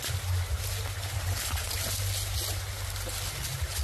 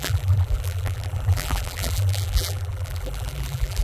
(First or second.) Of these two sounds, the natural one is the first